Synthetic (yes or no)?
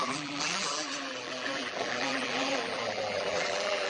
yes